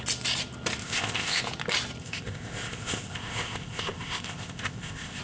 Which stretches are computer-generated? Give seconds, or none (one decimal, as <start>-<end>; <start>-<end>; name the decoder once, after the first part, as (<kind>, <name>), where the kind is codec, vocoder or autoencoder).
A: 0.8-1.4 (codec, ZipCodec); 2.0-5.2